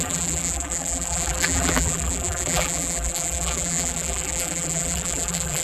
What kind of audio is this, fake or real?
fake